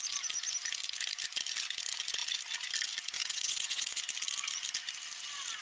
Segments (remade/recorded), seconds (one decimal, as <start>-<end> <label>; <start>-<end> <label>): 0.0-3.2 recorded; 3.2-4.0 remade; 4.0-5.6 recorded